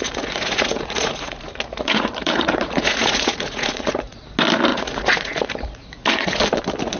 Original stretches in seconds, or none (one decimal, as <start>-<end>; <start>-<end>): 4.2-4.7; 6.4-7.0